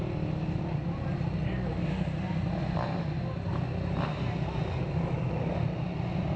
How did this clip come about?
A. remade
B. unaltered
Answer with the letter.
B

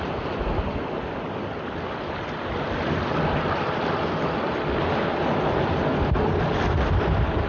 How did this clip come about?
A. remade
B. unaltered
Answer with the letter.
B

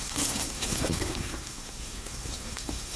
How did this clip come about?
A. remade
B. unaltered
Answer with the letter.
A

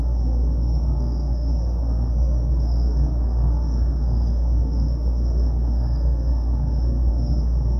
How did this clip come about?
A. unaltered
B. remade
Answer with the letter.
B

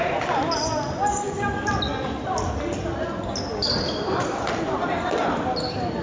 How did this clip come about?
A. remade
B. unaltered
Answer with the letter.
B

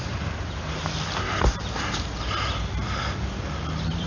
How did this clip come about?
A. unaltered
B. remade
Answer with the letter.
B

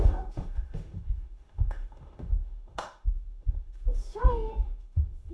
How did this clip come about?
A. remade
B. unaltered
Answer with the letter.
A